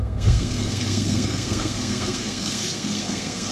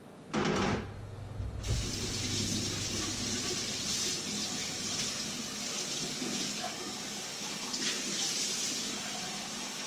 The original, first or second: second